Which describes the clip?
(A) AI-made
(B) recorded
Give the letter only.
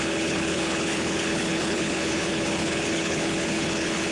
A